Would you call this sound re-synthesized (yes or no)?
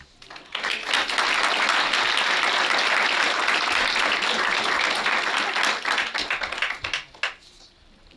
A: no